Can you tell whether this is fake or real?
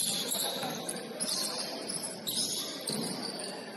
real